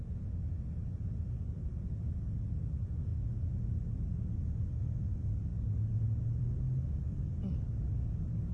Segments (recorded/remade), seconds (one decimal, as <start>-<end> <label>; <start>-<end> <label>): 0.0-8.5 recorded

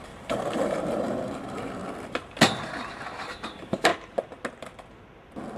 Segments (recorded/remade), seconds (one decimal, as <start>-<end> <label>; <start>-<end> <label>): 0.0-1.8 remade; 1.8-2.9 recorded; 2.9-3.9 remade; 3.9-5.6 recorded